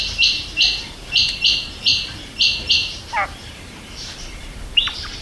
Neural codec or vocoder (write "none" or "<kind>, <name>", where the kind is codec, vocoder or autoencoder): vocoder, BigVGAN v2